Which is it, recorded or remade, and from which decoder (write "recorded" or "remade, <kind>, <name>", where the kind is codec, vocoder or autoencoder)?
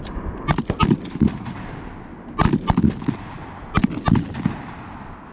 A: recorded